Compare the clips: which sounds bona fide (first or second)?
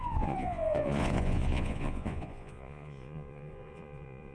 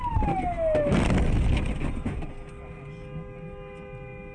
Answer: second